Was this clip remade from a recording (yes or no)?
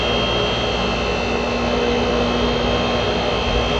no